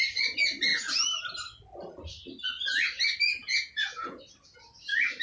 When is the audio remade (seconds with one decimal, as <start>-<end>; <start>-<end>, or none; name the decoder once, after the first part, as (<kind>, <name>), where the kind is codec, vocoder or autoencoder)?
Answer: 3.4-4.2 (vocoder, Vocos)